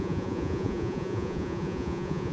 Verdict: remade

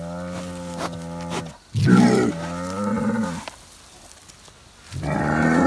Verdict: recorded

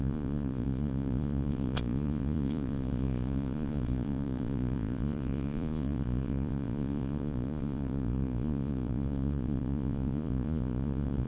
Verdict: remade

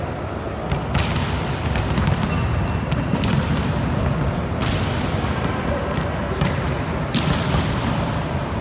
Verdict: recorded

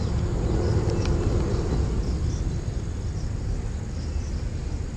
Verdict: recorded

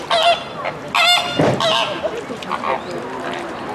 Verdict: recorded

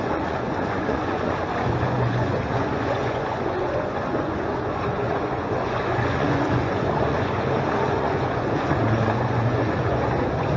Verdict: remade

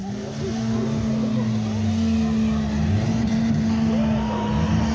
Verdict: recorded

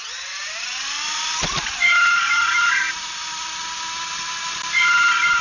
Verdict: recorded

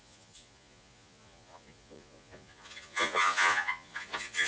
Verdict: remade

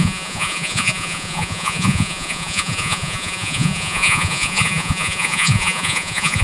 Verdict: remade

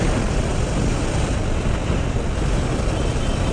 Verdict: recorded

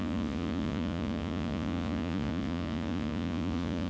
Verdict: remade